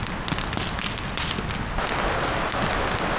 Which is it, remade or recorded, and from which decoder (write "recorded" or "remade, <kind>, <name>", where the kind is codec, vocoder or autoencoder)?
recorded